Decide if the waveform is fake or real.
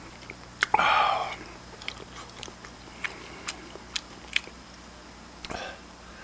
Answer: real